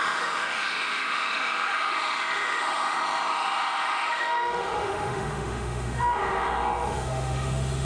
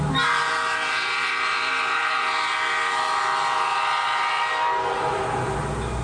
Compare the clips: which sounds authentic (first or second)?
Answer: second